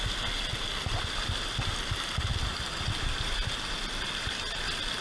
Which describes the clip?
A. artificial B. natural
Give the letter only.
B